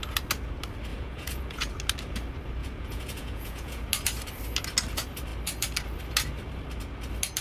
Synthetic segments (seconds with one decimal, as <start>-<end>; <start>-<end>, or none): 0.9-1.7; 2.6-3.9